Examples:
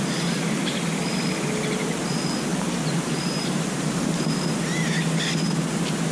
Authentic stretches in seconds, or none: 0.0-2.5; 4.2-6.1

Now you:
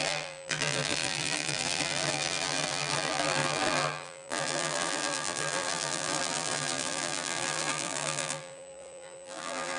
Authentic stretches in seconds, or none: none

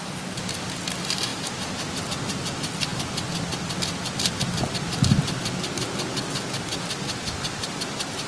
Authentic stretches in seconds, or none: 0.0-8.3